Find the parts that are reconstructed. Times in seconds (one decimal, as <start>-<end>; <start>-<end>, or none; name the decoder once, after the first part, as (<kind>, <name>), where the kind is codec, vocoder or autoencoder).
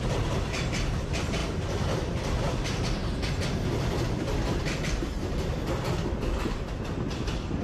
1.4-2.0 (vocoder, BigVGAN v2)